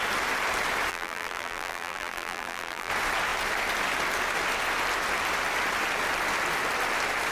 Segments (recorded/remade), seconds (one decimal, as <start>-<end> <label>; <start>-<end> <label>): 0.0-0.9 recorded; 0.9-2.9 remade; 2.9-7.3 recorded